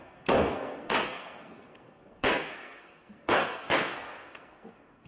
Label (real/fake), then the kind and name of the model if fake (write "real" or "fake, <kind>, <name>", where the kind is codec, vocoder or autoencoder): fake, codec, SNAC